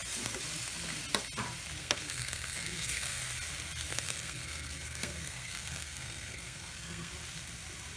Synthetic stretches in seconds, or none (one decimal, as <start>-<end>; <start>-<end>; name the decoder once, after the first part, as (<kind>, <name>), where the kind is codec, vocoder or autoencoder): 1.8-3.2 (codec, SNAC); 3.9-7.1